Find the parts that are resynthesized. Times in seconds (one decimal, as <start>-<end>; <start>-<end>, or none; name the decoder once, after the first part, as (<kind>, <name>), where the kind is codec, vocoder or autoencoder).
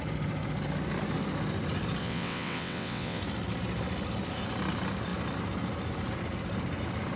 2.0-3.2 (vocoder, WaveNeXt)